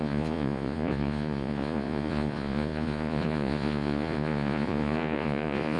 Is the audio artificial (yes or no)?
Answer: yes